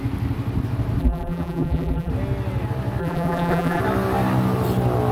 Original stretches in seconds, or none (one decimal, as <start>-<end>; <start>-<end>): 0.0-1.0; 2.1-3.0; 3.8-5.1